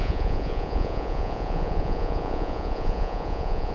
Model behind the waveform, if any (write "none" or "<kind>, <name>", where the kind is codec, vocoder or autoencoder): vocoder, Vocos